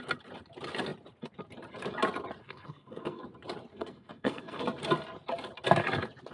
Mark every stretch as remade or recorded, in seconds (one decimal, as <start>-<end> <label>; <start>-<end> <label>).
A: 0.0-2.4 recorded; 2.4-3.2 remade; 3.2-3.7 recorded; 3.7-4.6 remade; 4.6-6.3 recorded